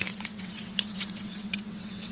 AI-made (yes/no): yes